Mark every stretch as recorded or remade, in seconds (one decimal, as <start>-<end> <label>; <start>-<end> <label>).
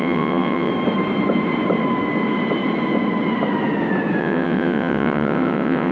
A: 0.0-0.7 remade; 0.7-4.2 recorded; 4.2-5.9 remade